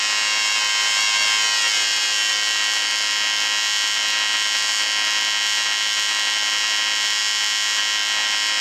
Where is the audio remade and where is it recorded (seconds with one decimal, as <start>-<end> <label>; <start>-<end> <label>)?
0.0-8.6 recorded